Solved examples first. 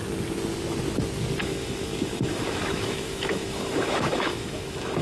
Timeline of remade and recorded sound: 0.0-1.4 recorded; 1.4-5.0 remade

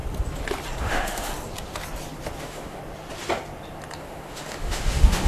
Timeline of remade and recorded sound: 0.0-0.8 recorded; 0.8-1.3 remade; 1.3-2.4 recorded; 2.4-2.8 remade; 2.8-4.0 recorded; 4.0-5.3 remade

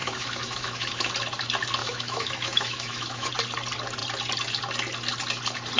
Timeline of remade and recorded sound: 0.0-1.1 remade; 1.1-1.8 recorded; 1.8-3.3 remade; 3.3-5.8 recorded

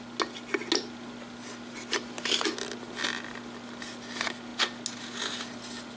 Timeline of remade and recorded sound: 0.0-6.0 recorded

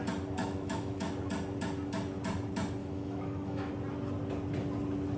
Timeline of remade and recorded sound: 0.0-0.4 recorded; 0.4-1.1 remade; 1.1-2.8 recorded; 2.8-3.7 remade; 3.7-5.2 recorded

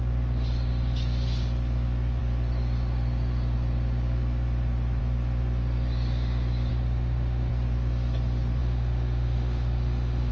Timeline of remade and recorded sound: 0.0-6.7 recorded; 6.7-7.5 remade; 7.5-8.6 recorded; 8.6-10.3 remade